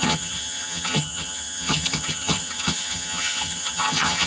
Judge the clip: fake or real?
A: fake